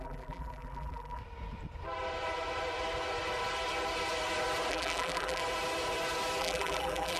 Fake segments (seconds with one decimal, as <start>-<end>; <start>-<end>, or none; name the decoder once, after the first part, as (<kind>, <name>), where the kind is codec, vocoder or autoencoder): 0.0-1.2 (vocoder, BigVGAN v2); 4.7-5.4; 6.4-7.2